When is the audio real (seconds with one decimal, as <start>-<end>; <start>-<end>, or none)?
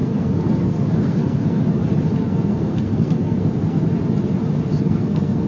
1.6-2.1; 3.8-4.7